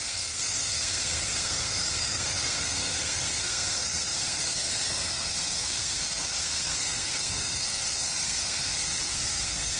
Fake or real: fake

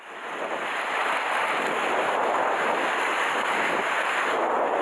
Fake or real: real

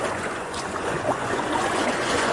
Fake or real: fake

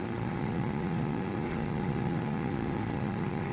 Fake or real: fake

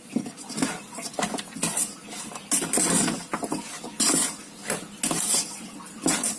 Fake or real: real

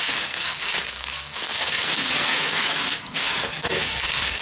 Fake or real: fake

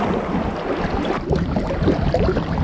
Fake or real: real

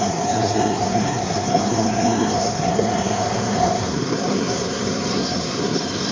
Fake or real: fake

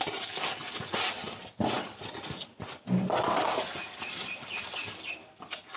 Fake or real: real